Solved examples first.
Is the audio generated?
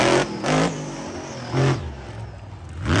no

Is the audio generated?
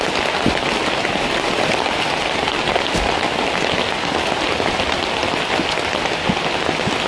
no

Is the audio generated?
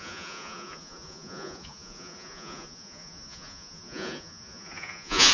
yes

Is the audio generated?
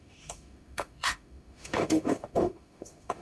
yes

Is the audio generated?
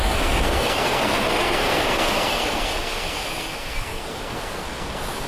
yes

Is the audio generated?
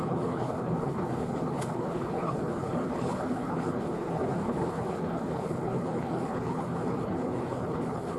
yes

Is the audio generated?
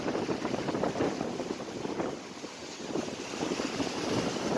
no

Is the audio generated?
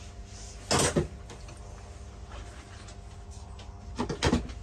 no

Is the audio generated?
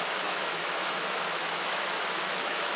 yes